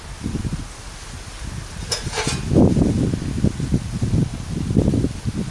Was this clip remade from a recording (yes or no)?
no